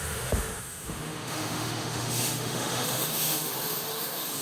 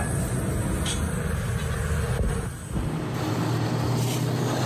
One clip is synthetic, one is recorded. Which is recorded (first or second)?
second